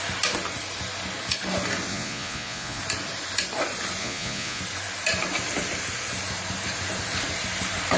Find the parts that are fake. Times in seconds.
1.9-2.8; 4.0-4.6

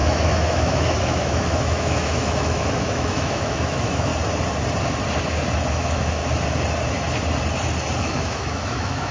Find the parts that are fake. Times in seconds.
0.0-4.1; 5.7-6.2; 8.0-9.1

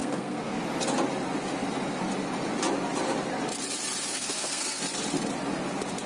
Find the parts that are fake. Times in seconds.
0.0-0.6; 4.1-4.8

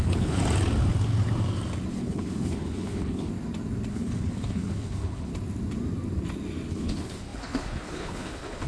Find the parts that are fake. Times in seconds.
0.0-0.4; 1.9-3.3; 3.9-5.3; 6.7-8.7

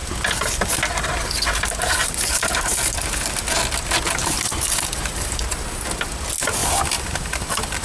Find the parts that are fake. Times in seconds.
4.2-5.4; 6.6-7.8